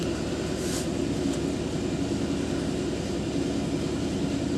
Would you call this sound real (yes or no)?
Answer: yes